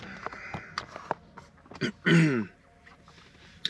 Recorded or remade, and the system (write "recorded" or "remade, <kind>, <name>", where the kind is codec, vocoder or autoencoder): recorded